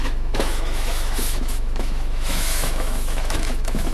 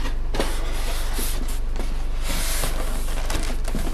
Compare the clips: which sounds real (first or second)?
second